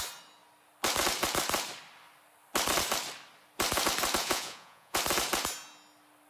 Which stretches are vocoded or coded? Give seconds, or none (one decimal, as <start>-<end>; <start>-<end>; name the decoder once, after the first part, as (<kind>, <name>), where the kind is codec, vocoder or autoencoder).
4.2-5.0 (vocoder, Vocos)

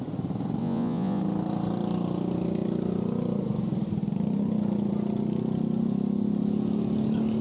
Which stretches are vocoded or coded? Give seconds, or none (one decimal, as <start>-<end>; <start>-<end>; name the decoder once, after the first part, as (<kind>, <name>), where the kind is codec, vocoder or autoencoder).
0.6-1.2 (vocoder, Vocos)

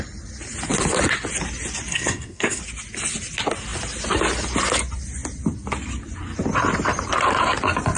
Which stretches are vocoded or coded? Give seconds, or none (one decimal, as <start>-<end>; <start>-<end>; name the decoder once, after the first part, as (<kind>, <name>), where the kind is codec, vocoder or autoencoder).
1.9-2.6 (codec, SNAC)

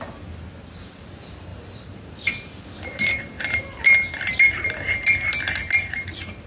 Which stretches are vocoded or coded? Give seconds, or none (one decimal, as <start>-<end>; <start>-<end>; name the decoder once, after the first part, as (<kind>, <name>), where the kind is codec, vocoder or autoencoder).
1.5-3.8 (vocoder, BigVGAN v2)

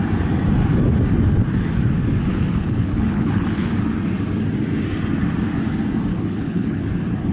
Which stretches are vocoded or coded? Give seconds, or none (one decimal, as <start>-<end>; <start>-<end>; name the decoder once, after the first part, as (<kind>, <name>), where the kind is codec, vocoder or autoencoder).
2.3-3.7 (codec, HILCodec); 6.1-6.8